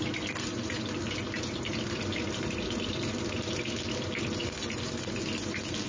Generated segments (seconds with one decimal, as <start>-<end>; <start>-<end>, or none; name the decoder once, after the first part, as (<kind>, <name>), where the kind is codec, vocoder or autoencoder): none